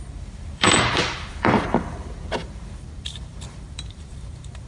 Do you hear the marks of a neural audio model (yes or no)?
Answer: yes